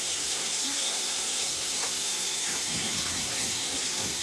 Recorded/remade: remade